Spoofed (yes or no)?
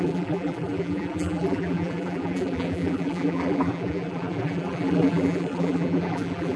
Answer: yes